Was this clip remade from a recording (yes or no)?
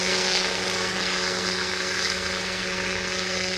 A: yes